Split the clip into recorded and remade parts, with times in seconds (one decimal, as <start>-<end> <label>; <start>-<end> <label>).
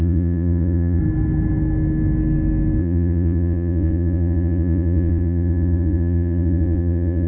0.0-1.0 remade; 1.0-2.8 recorded; 2.8-7.3 remade